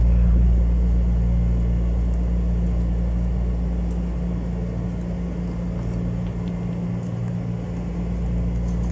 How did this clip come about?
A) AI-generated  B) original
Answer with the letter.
B